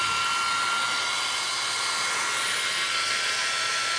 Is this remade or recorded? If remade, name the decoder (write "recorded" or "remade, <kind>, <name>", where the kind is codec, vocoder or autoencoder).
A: recorded